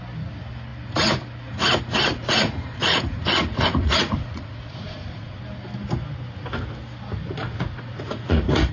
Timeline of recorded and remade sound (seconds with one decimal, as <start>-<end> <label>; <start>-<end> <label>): 0.0-2.1 recorded; 2.1-5.4 remade; 5.4-7.4 recorded; 7.4-8.7 remade